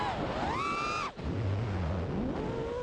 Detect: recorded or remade recorded